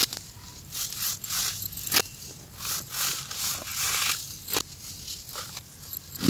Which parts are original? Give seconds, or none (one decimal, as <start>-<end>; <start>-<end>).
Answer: 0.0-6.3